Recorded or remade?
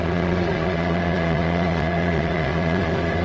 remade